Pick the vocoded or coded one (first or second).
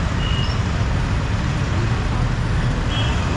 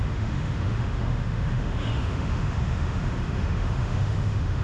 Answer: second